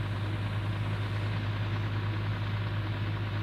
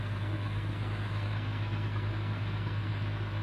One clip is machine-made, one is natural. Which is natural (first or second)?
first